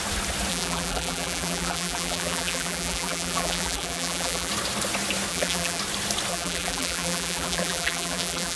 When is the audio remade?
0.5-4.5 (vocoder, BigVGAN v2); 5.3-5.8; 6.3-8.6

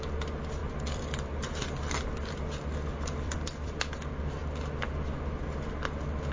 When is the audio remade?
0.6-3.7 (vocoder, BigVGAN v2)

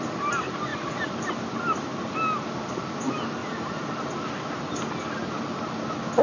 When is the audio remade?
3.4-3.9 (vocoder, BigVGAN v2)

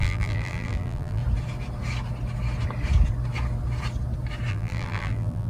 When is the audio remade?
0.0-1.2 (vocoder, BigVGAN v2); 4.5-5.5

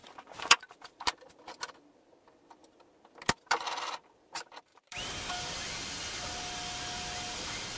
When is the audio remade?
0.0-1.7 (vocoder, BigVGAN v2); 4.7-5.3

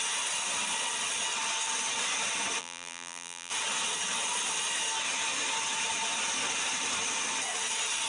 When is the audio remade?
2.6-3.5 (vocoder, BigVGAN v2)

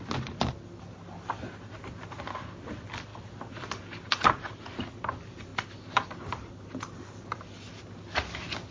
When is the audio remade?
5.5-6.5 (vocoder, BigVGAN v2)

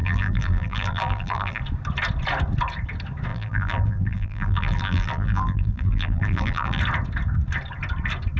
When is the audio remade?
0.0-1.6 (vocoder, BigVGAN v2); 3.3-6.8